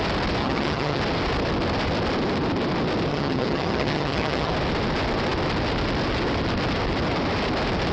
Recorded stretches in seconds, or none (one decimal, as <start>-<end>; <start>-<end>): 0.0-0.4; 1.0-3.1; 4.5-7.9